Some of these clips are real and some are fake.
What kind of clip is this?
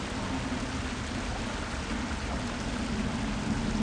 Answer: real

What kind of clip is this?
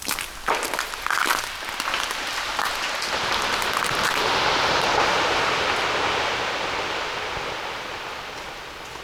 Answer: real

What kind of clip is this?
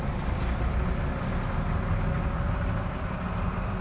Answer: real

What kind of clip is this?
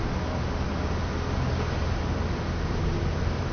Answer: real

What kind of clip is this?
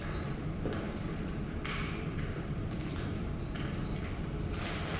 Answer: fake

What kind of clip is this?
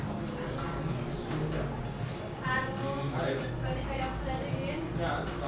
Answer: real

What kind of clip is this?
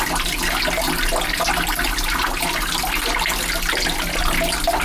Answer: real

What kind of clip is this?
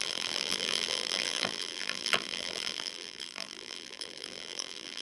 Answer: fake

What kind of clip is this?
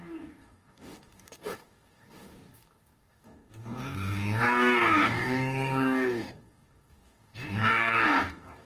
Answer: fake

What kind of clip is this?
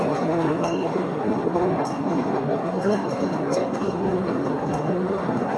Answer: fake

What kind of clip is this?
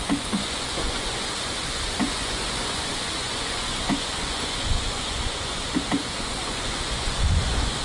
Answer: fake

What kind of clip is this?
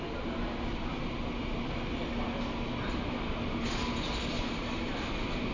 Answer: real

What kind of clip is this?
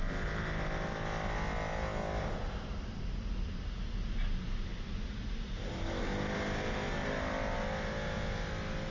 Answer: real